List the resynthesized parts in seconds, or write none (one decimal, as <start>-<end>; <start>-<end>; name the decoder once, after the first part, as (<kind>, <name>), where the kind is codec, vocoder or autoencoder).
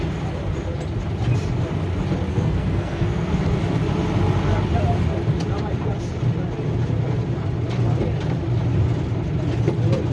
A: 2.3-3.4 (codec, SNAC)